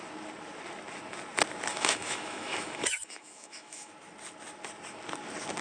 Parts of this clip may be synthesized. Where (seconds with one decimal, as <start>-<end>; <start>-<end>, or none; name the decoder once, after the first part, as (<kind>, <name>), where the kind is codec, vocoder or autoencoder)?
1.7-3.9 (autoencoder, DAC-VAE)